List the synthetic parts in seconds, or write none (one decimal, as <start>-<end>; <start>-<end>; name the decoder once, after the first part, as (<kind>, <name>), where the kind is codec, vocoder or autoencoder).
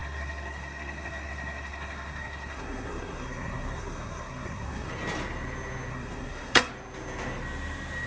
0.0-4.9 (codec, SNAC); 5.9-6.7